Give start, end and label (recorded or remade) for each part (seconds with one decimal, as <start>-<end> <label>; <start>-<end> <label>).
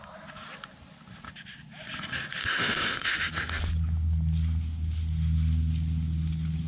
0.0-2.4 recorded; 2.4-3.3 remade; 3.3-6.7 recorded